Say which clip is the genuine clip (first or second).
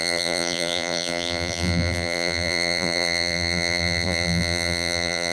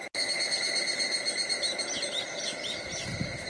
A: second